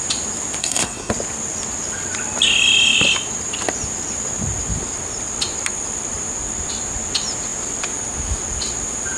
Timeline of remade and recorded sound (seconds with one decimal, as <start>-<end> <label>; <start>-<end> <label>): 0.0-0.6 recorded; 0.6-1.1 remade; 1.1-9.2 recorded